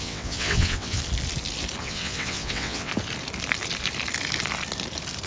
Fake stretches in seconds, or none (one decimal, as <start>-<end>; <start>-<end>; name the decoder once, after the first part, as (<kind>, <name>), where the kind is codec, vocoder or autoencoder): 0.0-1.0 (vocoder, WaveNeXt); 1.8-2.9